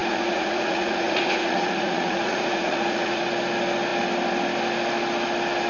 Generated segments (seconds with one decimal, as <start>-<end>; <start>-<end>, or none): 0.0-3.2